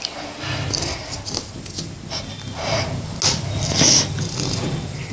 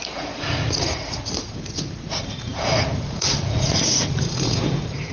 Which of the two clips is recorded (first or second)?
first